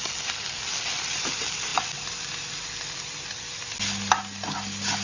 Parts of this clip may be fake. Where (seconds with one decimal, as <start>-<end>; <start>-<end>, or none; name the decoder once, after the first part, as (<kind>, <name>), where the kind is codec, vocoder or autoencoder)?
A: none